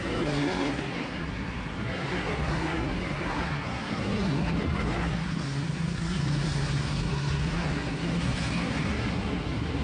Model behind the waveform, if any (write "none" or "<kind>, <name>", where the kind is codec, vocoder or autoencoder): codec, SNAC